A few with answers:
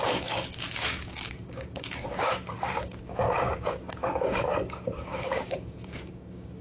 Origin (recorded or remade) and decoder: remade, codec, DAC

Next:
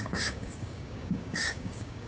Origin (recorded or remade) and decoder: remade, codec, DAC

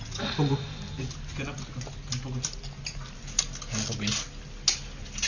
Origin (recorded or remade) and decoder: recorded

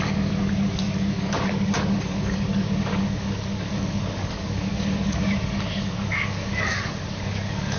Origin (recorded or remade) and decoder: remade, codec, DAC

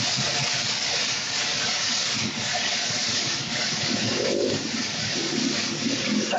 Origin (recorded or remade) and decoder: remade, codec, DAC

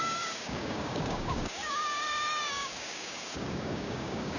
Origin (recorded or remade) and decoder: remade, codec, DAC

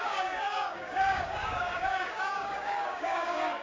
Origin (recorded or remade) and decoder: remade, codec, DAC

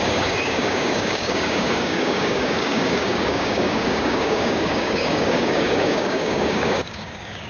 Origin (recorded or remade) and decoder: remade, codec, DAC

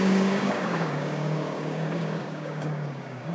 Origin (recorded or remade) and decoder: remade, codec, DAC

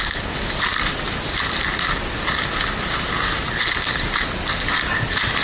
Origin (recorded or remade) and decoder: recorded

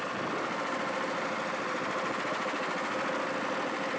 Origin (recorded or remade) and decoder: recorded